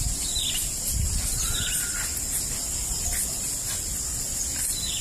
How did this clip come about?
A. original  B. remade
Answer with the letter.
A